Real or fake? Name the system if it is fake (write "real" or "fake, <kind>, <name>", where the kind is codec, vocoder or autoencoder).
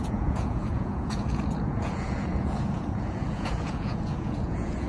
fake, vocoder, Vocos